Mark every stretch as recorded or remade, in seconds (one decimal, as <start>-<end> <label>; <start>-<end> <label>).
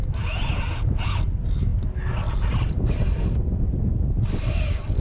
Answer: 0.0-5.0 recorded